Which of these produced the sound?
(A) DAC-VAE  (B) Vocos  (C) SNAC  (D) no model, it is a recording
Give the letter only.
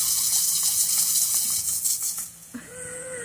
B